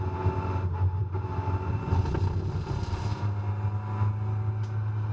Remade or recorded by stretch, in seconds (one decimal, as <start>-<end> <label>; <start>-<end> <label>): 0.0-5.1 recorded